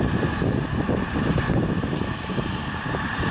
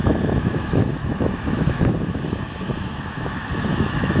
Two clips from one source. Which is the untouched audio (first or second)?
first